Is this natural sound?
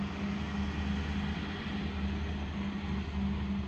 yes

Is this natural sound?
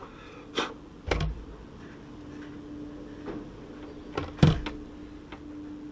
yes